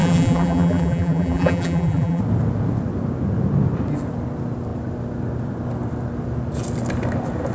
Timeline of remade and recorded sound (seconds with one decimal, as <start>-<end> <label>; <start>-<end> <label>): 0.0-2.2 remade; 2.2-7.5 recorded